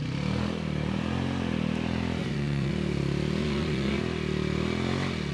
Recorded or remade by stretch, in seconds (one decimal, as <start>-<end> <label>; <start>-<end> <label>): 0.0-2.2 recorded; 2.2-2.7 remade; 2.7-3.4 recorded; 3.4-4.0 remade; 4.0-5.3 recorded